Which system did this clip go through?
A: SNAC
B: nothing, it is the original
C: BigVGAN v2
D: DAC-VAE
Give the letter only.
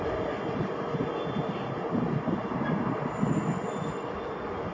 B